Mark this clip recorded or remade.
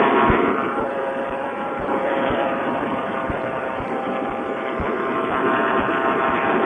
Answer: remade